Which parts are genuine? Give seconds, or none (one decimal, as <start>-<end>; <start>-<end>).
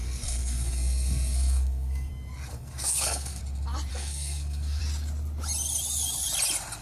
2.1-2.5; 3.4-3.9; 4.8-6.8